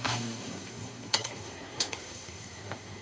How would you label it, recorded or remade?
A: remade